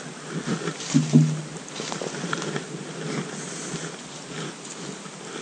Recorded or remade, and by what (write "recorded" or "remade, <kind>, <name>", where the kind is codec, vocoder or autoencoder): recorded